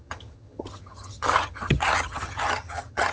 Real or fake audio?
fake